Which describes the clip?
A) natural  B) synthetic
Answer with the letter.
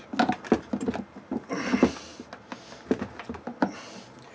A